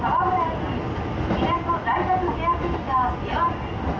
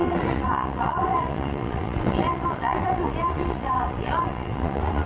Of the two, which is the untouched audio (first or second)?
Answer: first